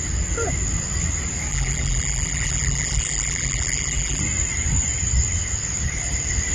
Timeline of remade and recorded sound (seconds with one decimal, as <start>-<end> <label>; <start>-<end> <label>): 0.0-1.5 recorded; 1.5-4.2 remade; 4.2-6.5 recorded